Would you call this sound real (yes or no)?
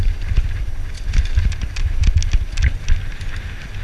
yes